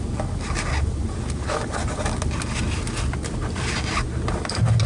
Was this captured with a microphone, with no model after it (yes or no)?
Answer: yes